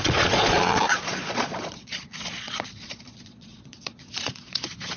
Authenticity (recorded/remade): remade